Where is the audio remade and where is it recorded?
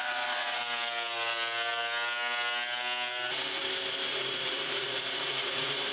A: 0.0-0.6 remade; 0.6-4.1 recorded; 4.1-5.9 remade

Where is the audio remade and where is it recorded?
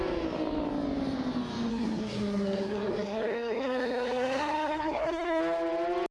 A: 0.0-1.7 recorded; 1.7-5.4 remade; 5.4-6.1 recorded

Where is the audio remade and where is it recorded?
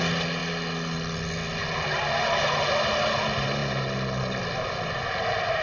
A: 0.0-5.6 recorded